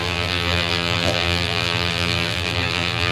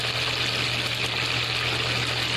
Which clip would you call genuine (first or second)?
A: second